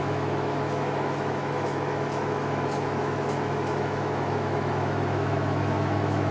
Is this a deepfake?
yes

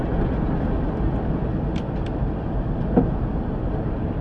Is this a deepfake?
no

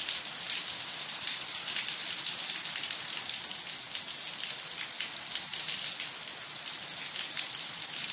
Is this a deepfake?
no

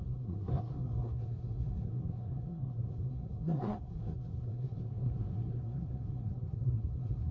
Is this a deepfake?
yes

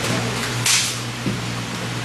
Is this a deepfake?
no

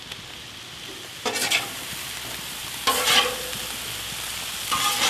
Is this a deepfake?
no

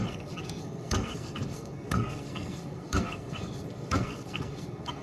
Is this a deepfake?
yes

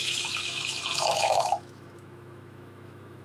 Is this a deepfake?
yes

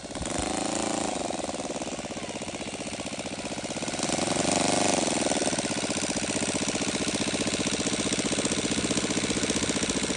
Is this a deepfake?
no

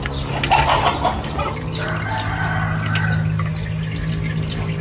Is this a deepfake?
no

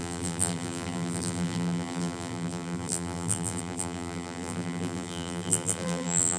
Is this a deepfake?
yes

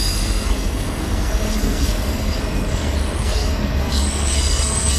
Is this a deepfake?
yes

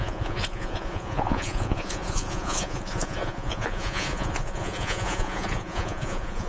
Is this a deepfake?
yes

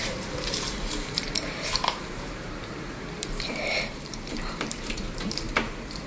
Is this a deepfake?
yes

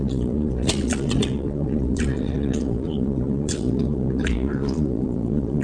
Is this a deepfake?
yes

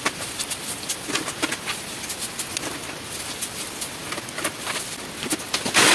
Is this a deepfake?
no